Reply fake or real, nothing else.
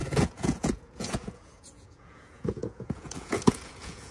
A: fake